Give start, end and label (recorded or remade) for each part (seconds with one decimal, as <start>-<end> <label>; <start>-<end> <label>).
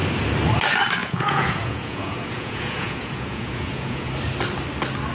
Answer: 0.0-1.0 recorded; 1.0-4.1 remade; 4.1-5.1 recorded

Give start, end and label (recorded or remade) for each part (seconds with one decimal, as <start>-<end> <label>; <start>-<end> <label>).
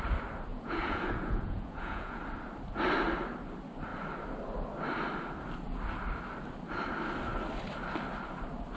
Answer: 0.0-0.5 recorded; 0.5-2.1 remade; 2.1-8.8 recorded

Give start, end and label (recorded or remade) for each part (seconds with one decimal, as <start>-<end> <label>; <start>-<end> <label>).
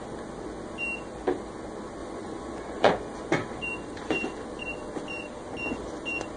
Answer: 0.0-2.0 recorded; 2.0-2.9 remade; 2.9-6.4 recorded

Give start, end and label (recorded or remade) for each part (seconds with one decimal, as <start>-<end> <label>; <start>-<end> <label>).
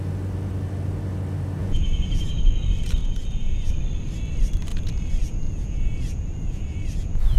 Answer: 0.0-1.6 recorded; 1.6-2.4 remade; 2.4-3.0 recorded; 3.0-3.7 remade; 3.7-4.7 recorded; 4.7-7.4 remade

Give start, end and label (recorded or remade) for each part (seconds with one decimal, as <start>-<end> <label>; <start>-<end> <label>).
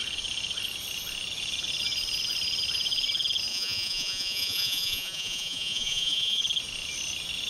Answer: 0.0-3.5 recorded; 3.5-6.4 remade; 6.4-7.5 recorded